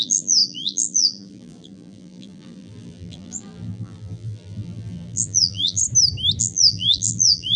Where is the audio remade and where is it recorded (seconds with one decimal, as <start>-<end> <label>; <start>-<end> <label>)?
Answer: 0.0-5.8 remade; 5.8-6.4 recorded; 6.4-7.6 remade